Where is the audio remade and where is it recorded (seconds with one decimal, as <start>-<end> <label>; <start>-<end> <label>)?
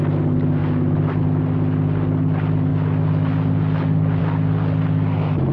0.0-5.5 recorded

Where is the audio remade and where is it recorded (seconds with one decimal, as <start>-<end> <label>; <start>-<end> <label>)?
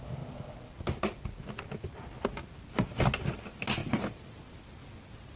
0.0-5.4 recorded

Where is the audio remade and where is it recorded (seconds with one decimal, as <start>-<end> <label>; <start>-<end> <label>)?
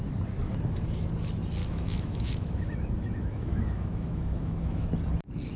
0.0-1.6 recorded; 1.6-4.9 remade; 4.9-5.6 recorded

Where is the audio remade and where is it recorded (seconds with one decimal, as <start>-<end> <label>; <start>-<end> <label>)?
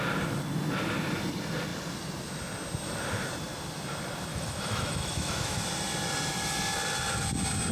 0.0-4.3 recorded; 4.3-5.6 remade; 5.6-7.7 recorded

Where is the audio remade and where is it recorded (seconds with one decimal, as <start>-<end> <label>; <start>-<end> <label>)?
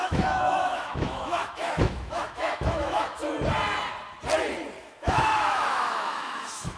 0.0-3.2 remade; 3.2-4.8 recorded; 4.8-6.8 remade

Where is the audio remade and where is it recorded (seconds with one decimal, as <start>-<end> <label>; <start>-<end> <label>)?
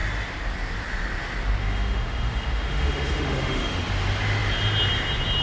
0.0-1.6 recorded; 1.6-3.8 remade; 3.8-5.4 recorded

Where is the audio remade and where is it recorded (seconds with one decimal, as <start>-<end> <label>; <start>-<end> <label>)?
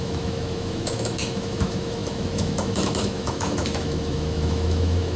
0.0-5.2 remade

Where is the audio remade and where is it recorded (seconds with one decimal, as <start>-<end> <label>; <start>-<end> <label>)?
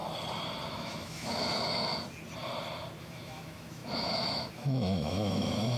0.0-0.7 recorded; 0.7-1.9 remade; 1.9-3.0 recorded; 3.0-5.8 remade